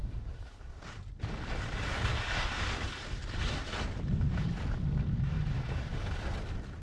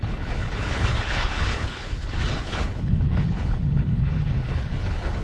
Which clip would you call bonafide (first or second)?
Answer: first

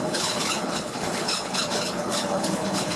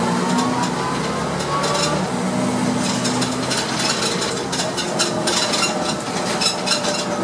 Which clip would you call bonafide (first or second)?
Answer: second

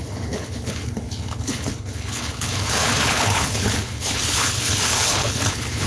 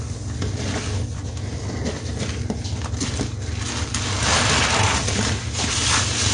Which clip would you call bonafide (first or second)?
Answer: second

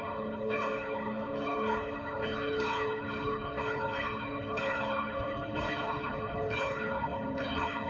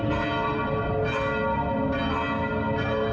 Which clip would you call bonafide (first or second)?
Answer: second